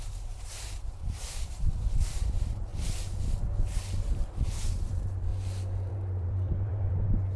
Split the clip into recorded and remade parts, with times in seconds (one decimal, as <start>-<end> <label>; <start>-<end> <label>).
0.0-2.7 remade; 2.7-4.0 recorded; 4.0-5.3 remade; 5.3-5.9 recorded; 5.9-7.4 remade